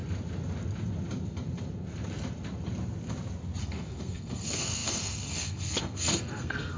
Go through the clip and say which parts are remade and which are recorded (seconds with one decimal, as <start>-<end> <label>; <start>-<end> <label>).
0.0-3.6 recorded; 3.6-6.8 remade